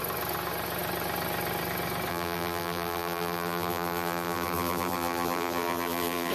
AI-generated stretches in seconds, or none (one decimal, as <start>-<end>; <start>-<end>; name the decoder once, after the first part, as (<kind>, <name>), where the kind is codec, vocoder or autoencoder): 2.1-6.3 (vocoder, BigVGAN v2)